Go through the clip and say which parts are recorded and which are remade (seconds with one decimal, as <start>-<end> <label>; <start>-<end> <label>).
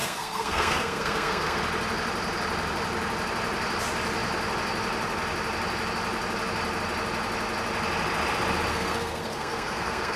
0.0-1.6 remade; 1.6-8.7 recorded; 8.7-10.2 remade